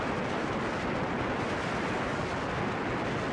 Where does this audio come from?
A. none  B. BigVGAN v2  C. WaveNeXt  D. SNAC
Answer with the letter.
A